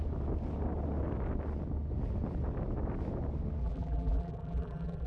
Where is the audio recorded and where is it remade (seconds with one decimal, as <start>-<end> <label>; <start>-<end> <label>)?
0.0-3.6 recorded; 3.6-5.1 remade